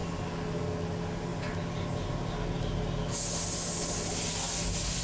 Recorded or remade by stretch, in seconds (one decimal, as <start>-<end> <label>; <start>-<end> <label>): 0.0-5.0 recorded